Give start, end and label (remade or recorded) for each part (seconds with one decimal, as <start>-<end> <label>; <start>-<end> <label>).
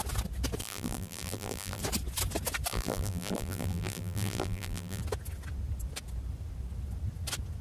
0.0-0.6 recorded; 0.6-1.8 remade; 1.8-2.7 recorded; 2.7-5.0 remade; 5.0-7.6 recorded